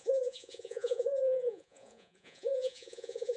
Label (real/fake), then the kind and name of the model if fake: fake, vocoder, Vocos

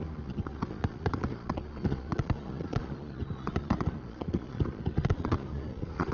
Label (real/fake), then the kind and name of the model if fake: fake, vocoder, Vocos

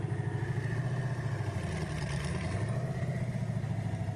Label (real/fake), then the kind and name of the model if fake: real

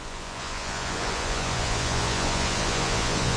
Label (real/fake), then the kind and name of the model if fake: fake, vocoder, Vocos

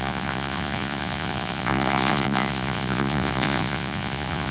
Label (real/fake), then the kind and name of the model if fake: fake, vocoder, Vocos